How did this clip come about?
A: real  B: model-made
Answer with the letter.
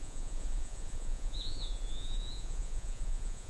B